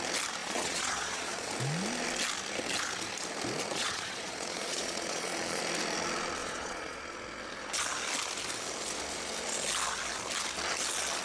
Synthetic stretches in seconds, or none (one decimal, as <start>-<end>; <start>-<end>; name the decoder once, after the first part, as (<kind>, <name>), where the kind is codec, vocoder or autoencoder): 0.4-1.5 (vocoder, Vocos); 3.7-5.6; 6.4-7.0